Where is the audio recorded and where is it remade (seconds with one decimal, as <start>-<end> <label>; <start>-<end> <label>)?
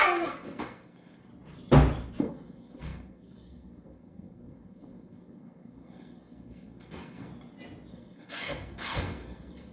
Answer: 0.0-1.3 remade; 1.3-2.2 recorded; 2.2-7.3 remade; 7.3-7.9 recorded; 7.9-9.7 remade